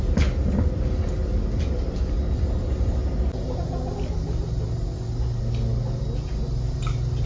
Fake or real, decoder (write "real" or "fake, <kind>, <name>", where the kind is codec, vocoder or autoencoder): real